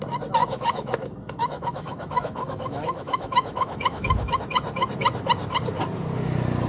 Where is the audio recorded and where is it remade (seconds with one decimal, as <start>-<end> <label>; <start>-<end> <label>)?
0.0-0.4 recorded; 0.4-4.4 remade; 4.4-6.7 recorded